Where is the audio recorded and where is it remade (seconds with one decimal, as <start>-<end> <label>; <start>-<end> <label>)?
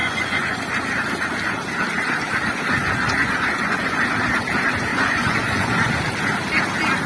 0.0-0.6 remade; 0.6-2.8 recorded; 2.8-4.0 remade; 4.0-4.9 recorded; 4.9-5.9 remade; 5.9-7.1 recorded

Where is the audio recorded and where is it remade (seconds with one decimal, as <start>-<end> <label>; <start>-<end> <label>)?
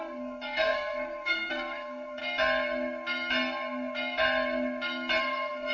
0.0-2.2 remade; 2.2-5.2 recorded; 5.2-5.7 remade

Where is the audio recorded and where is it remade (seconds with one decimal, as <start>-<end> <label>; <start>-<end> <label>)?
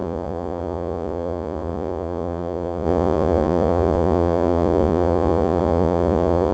0.0-6.5 remade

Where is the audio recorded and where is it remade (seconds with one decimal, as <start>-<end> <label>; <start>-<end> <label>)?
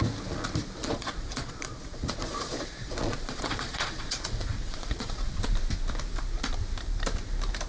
0.0-0.8 recorded; 0.8-5.4 remade; 5.4-7.7 recorded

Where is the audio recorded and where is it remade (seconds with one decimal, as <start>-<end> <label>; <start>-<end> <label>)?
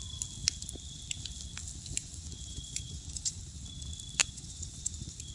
0.0-2.0 recorded; 2.0-3.4 remade; 3.4-4.2 recorded; 4.2-5.3 remade